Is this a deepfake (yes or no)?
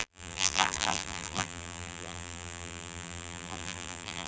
yes